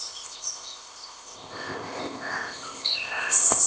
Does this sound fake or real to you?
fake